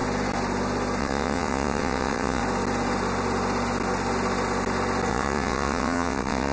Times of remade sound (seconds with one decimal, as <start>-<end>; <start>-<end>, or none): 1.0-2.4; 5.1-6.5